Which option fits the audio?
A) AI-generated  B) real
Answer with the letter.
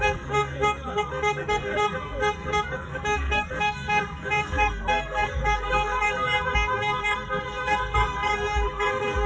A